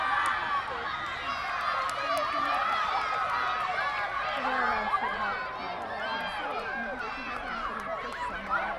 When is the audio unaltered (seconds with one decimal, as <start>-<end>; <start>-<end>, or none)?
0.0-8.8